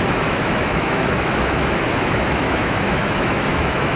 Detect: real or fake fake